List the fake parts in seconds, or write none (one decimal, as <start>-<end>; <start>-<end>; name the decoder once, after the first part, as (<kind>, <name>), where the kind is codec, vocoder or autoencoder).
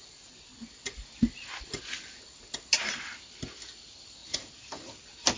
none